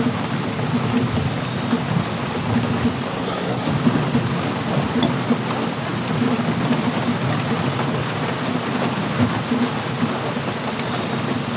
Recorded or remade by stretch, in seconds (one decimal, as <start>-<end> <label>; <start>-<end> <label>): 0.0-3.1 recorded; 3.1-3.7 remade; 3.7-11.6 recorded